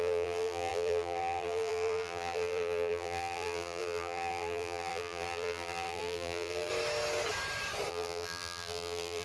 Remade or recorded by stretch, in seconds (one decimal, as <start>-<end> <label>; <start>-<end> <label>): 0.0-6.7 remade; 6.7-7.9 recorded; 7.9-9.2 remade